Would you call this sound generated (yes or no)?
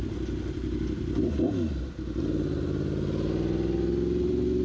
no